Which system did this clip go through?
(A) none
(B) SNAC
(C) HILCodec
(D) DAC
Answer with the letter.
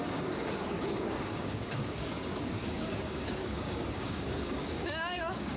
D